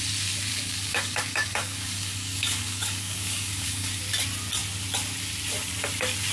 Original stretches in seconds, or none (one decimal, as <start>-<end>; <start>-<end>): 0.0-0.5; 4.0-6.3